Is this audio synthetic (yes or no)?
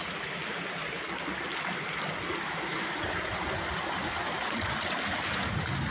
no